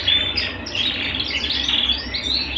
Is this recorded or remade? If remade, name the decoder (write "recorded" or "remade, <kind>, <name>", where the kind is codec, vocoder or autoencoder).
recorded